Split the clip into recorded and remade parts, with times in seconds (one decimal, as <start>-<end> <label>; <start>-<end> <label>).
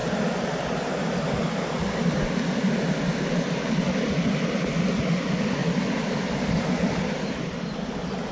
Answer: 0.0-8.3 recorded